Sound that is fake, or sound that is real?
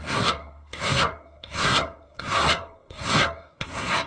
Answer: fake